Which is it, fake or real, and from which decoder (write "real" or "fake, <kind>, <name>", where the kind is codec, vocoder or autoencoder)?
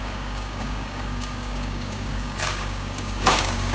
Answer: fake, codec, DAC